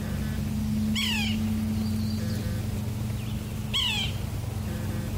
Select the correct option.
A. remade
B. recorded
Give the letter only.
B